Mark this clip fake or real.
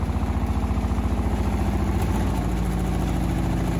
real